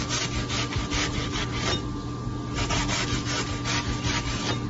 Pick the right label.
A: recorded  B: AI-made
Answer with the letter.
A